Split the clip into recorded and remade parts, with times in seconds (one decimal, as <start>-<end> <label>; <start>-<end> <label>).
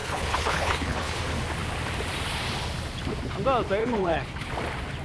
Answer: 0.0-1.2 remade; 1.2-3.8 recorded; 3.8-4.5 remade; 4.5-5.0 recorded